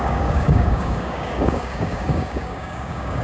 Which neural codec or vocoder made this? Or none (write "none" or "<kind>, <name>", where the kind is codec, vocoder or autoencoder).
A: codec, DAC